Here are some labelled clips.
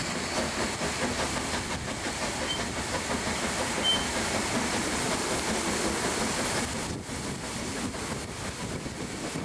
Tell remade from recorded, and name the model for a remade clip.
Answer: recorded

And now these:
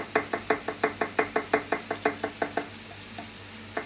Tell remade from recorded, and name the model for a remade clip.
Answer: recorded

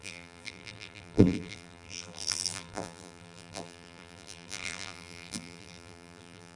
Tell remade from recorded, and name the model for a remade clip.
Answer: remade, vocoder, BigVGAN v2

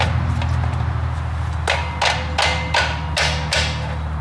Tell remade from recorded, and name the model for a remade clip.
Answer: recorded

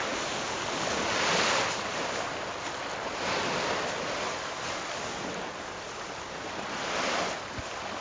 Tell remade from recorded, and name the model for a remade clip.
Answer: recorded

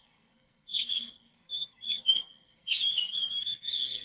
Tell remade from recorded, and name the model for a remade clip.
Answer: remade, codec, SNAC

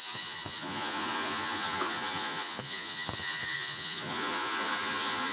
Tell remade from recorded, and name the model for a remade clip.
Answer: remade, vocoder, Vocos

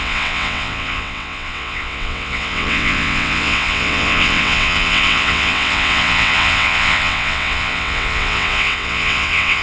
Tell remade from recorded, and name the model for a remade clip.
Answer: remade, vocoder, WaveNeXt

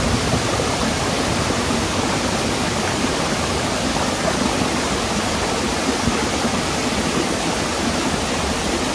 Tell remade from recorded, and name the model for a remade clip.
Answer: recorded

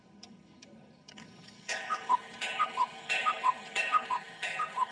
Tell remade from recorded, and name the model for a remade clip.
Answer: remade, codec, HILCodec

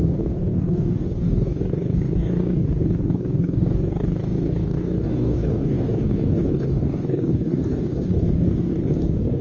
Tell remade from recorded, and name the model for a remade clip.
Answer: remade, codec, DAC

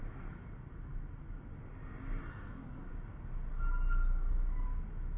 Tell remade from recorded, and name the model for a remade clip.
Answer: recorded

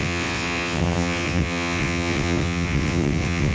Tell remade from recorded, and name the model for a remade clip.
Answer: remade, vocoder, WaveNeXt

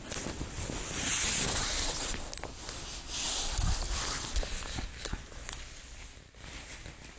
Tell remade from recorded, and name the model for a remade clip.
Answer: recorded